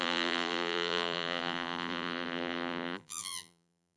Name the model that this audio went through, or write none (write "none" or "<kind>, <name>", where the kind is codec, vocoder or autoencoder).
vocoder, BigVGAN v2